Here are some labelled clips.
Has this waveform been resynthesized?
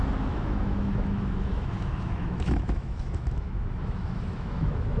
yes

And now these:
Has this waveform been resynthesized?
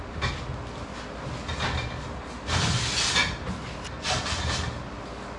no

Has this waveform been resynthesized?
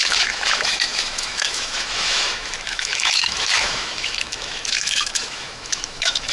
yes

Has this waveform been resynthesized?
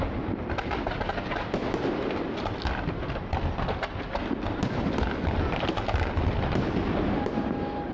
no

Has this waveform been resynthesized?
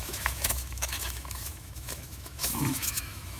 yes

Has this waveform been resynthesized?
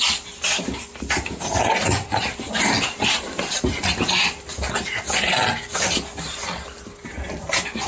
no